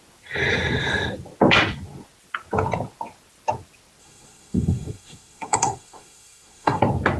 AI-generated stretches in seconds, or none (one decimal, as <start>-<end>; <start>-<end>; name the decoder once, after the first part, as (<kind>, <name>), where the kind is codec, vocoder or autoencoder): 4.0-6.8 (codec, SNAC)

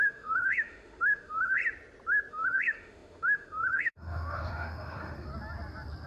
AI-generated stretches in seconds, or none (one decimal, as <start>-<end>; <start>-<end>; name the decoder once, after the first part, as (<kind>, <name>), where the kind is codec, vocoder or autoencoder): 0.0-1.6 (autoencoder, DAC-VAE); 2.3-5.3

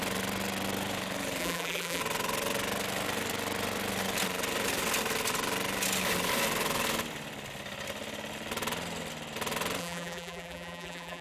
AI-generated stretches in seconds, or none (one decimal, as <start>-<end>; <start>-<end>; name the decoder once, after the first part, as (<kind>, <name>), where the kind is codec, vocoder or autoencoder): 1.4-2.0 (vocoder, BigVGAN v2); 9.8-11.2

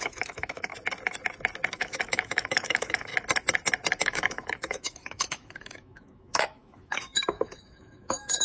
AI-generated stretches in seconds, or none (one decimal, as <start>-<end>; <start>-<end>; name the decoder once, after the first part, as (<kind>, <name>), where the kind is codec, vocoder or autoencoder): 0.0-0.7 (autoencoder, DAC-VAE); 1.7-3.1; 4.0-8.4